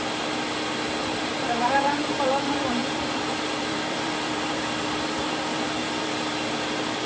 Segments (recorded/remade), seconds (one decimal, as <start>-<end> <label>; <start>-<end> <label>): 0.0-1.0 recorded; 1.0-2.4 remade; 2.4-2.8 recorded; 2.8-7.1 remade